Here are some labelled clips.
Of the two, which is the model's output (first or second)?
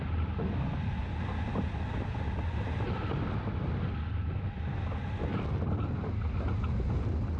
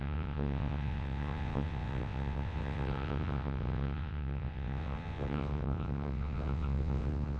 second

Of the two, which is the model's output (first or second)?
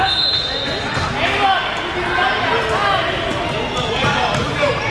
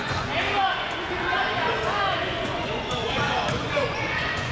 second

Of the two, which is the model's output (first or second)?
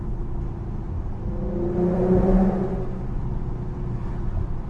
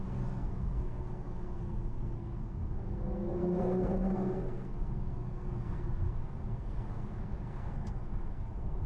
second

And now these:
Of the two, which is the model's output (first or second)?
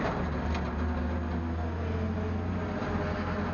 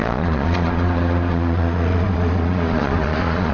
second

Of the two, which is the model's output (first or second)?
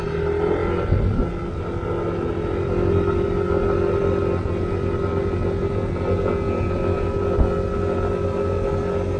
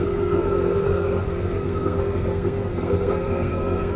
second